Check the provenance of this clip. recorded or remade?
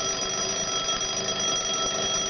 recorded